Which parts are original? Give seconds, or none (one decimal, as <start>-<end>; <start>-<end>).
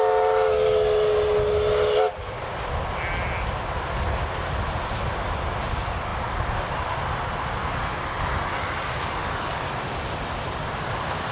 0.0-7.6; 9.7-11.3